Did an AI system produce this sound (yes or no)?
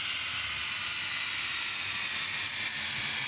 no